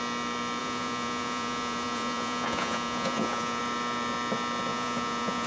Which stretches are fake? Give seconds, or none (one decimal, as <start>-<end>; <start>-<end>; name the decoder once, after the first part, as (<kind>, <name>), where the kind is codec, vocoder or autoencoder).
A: 0.6-3.6 (vocoder, Vocos); 4.7-5.5